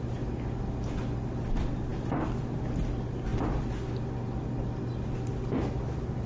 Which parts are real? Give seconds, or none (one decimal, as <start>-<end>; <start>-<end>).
0.0-6.3